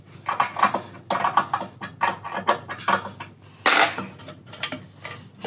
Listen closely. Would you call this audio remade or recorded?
recorded